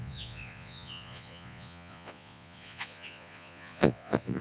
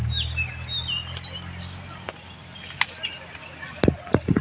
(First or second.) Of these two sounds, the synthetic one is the first